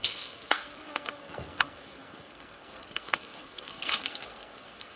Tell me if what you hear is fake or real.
fake